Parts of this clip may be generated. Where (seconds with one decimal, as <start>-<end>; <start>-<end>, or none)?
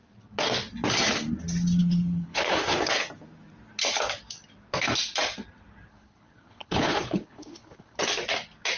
1.8-2.9; 5.9-8.0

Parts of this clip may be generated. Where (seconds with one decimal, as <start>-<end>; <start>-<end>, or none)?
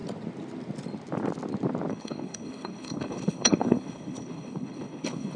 1.9-5.4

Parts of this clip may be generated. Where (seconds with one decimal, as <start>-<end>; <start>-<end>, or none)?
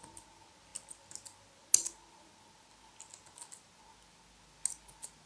none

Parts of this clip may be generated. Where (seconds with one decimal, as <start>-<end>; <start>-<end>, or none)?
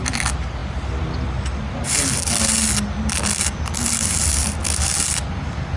none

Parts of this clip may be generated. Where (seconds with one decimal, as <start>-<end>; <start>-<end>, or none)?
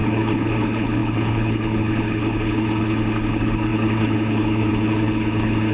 0.0-5.7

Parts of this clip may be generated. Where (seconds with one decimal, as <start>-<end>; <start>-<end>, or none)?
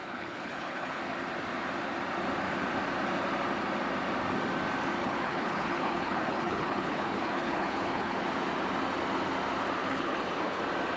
0.0-1.0; 5.0-8.2; 9.8-10.6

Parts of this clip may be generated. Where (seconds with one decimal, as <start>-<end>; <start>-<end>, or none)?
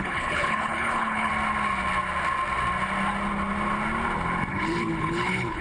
0.0-1.3; 4.5-5.6